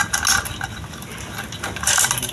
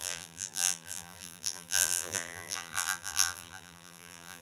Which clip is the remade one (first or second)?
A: second